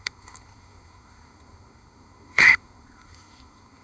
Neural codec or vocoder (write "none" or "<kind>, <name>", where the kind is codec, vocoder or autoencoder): codec, SNAC